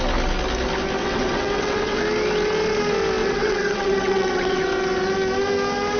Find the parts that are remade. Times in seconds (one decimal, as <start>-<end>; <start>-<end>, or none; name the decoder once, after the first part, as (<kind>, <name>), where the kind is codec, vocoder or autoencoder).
1.0-2.0 (vocoder, WaveNeXt); 3.2-4.6